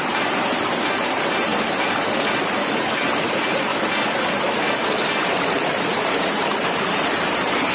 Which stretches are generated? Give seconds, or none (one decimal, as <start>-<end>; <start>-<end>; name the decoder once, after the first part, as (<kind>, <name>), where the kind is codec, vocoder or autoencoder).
0.0-1.5 (vocoder, BigVGAN v2); 3.3-3.7; 5.7-7.7